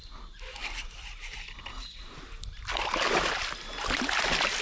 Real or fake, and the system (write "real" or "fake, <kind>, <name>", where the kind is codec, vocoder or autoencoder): real